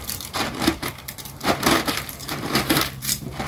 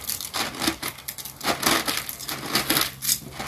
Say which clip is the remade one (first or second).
first